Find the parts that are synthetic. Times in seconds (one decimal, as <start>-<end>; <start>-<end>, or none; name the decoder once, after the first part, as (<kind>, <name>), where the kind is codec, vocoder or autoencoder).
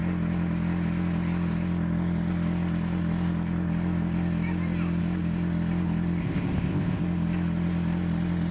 6.2-7.0 (codec, ZipCodec)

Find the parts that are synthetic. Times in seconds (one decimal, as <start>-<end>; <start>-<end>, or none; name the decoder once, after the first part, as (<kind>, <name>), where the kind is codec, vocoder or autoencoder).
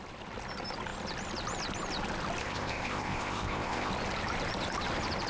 2.4-3.9 (codec, ZipCodec)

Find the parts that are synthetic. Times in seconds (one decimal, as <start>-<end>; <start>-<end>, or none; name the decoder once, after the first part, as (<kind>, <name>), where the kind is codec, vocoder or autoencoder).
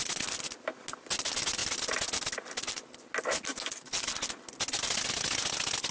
none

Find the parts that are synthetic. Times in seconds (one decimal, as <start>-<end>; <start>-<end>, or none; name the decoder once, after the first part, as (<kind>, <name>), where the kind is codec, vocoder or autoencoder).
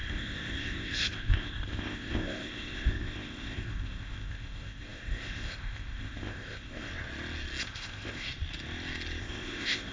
0.0-6.9 (codec, ZipCodec); 7.6-8.3; 9.2-9.9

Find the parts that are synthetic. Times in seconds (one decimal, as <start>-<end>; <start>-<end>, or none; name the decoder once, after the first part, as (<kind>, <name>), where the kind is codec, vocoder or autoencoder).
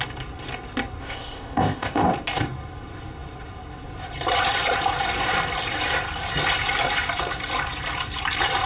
1.0-2.1 (codec, ZipCodec)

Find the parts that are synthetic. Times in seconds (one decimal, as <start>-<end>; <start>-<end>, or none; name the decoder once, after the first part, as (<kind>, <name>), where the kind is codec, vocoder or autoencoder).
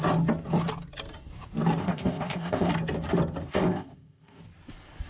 1.8-2.7 (codec, ZipCodec); 3.5-4.4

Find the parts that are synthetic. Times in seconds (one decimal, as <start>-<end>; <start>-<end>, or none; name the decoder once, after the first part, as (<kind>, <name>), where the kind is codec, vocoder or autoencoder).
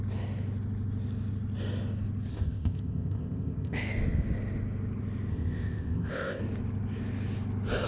2.3-3.8 (codec, ZipCodec); 5.3-6.4